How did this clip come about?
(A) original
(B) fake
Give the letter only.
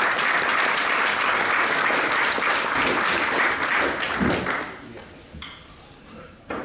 A